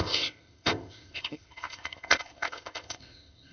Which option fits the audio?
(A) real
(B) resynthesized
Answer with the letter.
B